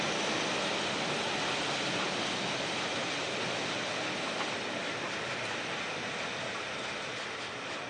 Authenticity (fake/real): real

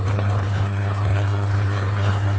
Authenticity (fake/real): fake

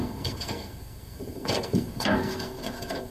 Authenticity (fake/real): fake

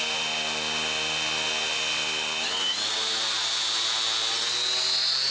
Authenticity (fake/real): real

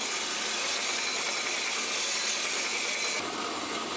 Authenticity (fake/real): real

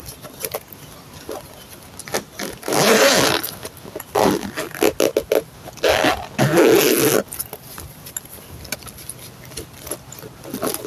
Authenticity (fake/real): real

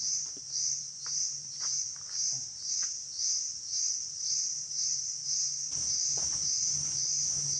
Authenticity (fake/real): fake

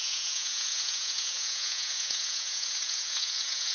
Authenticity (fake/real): fake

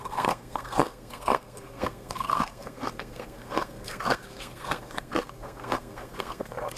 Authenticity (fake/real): fake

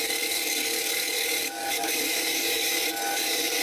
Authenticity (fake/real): fake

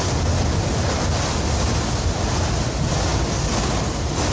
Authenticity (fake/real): real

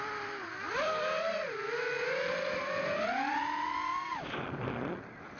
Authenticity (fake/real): fake